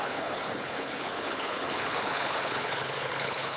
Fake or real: fake